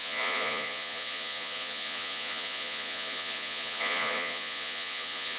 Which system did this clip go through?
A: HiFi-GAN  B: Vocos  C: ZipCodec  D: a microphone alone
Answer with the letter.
B